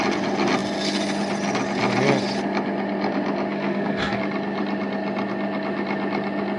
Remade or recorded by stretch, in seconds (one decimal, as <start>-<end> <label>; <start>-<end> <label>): 0.0-3.5 recorded; 3.5-4.2 remade; 4.2-6.6 recorded